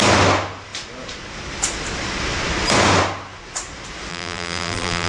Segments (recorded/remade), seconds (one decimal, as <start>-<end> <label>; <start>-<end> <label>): 0.0-4.1 recorded; 4.1-5.1 remade